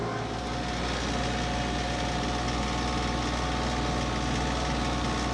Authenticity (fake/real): real